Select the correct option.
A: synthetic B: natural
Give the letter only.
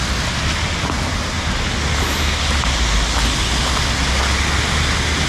B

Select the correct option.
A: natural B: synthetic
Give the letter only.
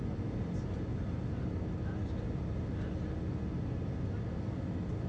A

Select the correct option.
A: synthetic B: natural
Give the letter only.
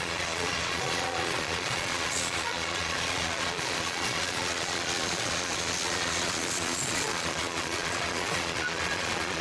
A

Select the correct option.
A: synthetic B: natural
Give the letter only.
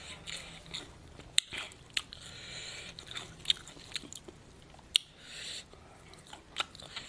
B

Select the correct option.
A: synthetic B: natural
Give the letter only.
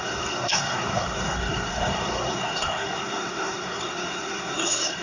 A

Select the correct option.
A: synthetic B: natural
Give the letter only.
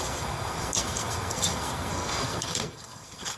A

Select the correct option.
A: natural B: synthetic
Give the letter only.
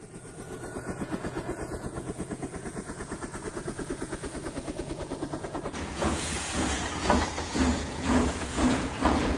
B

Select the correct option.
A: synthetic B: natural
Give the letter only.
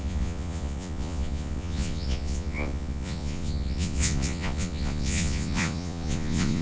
A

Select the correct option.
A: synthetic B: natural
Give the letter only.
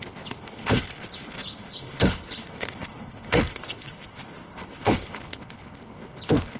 A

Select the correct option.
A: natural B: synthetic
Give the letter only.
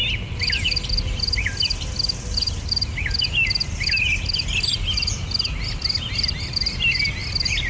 A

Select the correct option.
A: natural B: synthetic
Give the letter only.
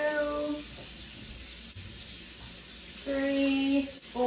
A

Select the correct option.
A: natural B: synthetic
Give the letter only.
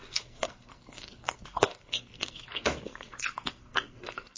B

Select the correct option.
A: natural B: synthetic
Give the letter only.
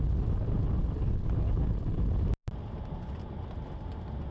A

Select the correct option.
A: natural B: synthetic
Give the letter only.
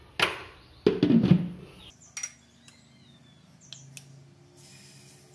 A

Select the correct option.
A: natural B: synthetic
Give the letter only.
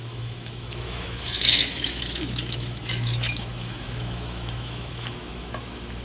B